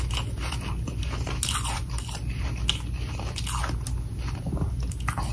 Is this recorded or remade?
recorded